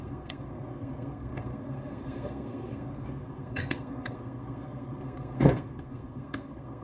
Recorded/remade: remade